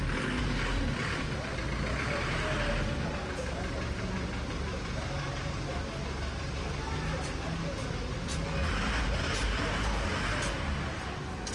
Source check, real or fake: real